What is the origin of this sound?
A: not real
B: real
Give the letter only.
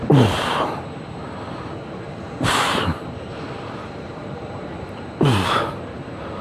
A